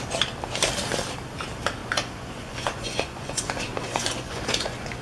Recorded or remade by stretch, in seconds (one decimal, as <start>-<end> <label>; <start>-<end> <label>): 0.0-1.8 recorded; 1.8-5.0 remade